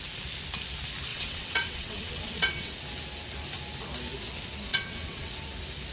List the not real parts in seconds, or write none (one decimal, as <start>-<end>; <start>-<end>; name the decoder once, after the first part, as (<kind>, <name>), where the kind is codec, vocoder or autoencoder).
1.1-2.7 (vocoder, WaveNeXt); 4.7-5.3